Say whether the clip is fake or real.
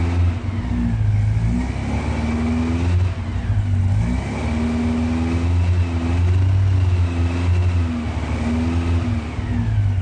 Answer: real